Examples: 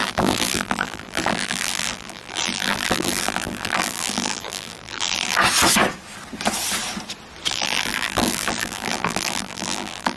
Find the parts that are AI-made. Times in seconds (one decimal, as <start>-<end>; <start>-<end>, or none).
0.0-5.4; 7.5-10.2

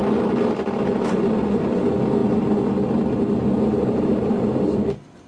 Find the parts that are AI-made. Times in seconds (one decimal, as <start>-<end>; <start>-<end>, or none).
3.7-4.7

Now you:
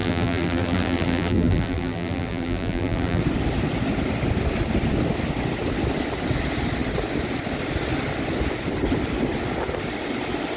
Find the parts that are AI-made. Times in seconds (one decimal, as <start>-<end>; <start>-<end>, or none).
0.0-3.2

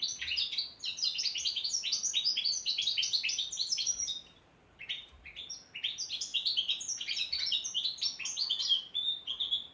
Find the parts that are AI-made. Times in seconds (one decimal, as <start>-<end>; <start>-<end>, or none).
3.6-5.1

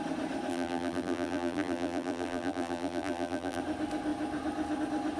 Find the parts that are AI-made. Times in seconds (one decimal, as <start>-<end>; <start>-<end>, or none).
0.5-3.6

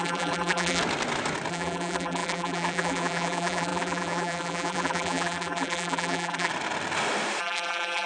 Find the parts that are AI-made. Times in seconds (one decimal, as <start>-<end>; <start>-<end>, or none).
0.0-0.8; 1.5-6.5; 7.4-8.1